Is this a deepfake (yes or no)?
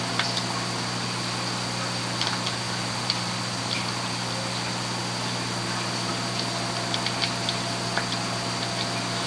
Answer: no